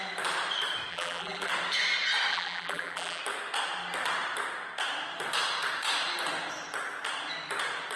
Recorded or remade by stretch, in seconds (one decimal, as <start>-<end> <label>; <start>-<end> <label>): 0.0-0.9 recorded; 0.9-1.5 remade; 1.5-2.3 recorded; 2.3-3.2 remade; 3.2-8.0 recorded